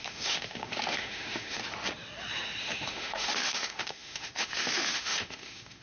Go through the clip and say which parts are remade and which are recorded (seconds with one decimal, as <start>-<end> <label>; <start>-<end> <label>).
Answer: 0.0-1.6 remade; 1.6-2.6 recorded; 2.6-5.8 remade